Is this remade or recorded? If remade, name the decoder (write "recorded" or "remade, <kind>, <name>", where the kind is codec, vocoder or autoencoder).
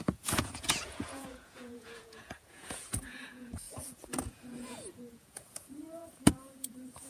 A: remade, vocoder, Vocos